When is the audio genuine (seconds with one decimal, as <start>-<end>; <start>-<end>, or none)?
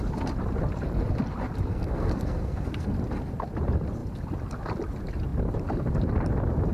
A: 0.0-1.7; 2.9-6.7